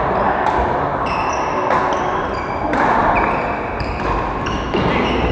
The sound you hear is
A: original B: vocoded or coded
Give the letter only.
A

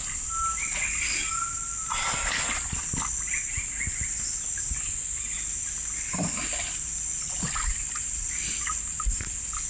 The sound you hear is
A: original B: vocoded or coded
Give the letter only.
A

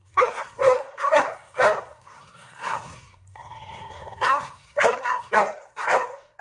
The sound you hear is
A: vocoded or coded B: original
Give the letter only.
A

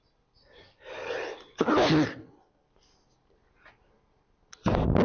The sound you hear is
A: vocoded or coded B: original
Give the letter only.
B